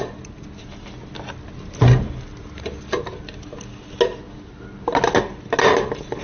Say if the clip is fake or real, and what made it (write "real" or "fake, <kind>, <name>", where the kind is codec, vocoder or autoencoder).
real